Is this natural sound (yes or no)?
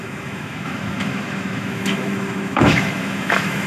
no